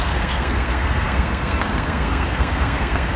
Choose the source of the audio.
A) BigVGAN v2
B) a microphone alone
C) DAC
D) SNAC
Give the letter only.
D